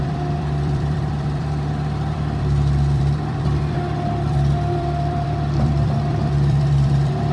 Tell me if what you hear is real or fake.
fake